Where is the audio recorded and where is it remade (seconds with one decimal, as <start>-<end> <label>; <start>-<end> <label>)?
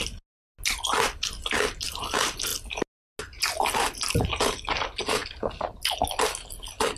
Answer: 0.0-7.0 recorded